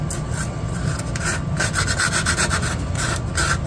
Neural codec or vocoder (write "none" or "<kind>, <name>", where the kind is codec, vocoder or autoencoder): vocoder, BigVGAN v2